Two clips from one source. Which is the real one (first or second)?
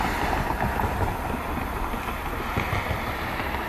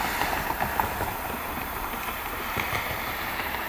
first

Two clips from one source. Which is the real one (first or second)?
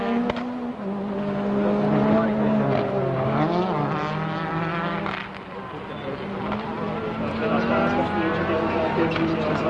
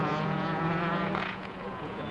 first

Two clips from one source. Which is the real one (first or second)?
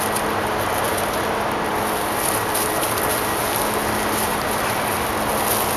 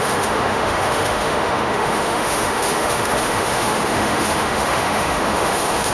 first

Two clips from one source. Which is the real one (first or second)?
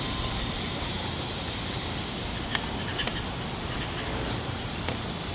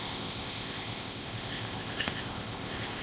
first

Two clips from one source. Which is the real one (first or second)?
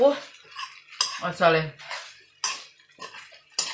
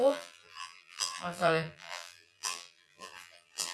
first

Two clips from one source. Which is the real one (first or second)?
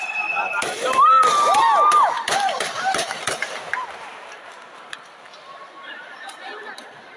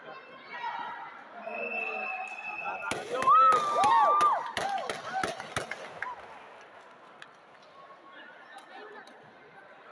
second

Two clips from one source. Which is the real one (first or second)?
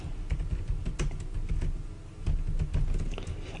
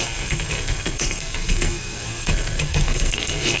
first